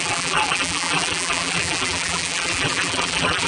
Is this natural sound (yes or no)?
no